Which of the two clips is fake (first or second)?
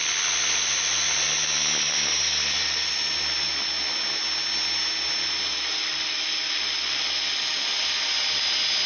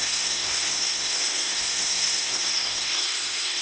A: second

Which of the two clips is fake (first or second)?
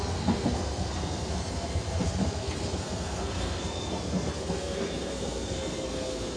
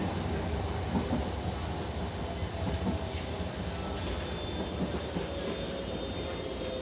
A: first